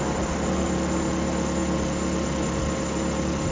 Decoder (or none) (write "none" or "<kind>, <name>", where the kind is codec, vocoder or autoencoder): none